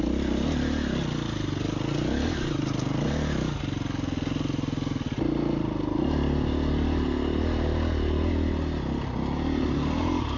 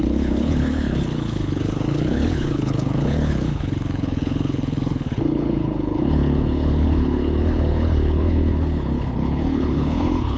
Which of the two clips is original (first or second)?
first